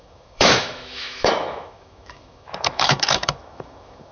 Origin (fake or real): fake